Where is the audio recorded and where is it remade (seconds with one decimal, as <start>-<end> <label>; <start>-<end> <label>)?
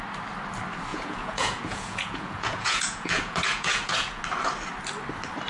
0.0-0.9 recorded; 0.9-4.2 remade; 4.2-5.5 recorded